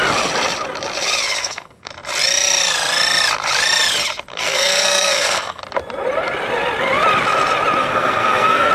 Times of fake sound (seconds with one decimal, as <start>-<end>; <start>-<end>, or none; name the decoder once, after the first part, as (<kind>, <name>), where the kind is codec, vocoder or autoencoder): 1.4-1.9 (codec, SNAC); 4.3-5.6; 7.8-8.7